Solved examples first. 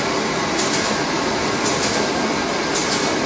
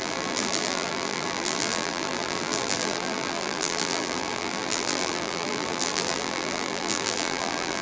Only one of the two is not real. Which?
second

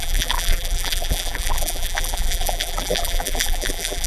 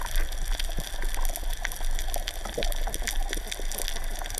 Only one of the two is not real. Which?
first